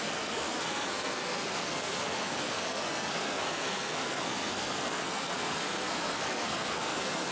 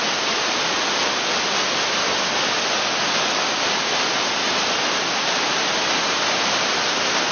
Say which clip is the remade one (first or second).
first